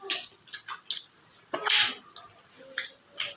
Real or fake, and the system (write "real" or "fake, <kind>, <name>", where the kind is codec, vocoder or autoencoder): real